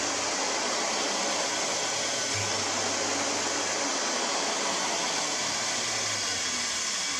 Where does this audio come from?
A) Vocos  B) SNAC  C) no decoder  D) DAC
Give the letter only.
C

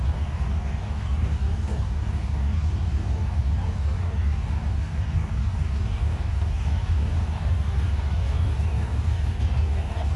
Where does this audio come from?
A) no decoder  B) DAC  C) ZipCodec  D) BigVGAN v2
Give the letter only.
B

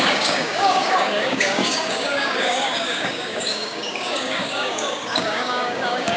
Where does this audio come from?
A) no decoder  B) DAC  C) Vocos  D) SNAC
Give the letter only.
B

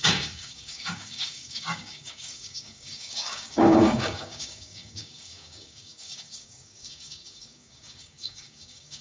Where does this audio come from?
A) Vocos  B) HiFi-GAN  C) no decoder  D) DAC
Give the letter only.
D